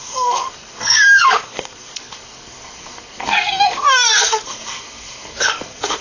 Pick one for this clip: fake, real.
fake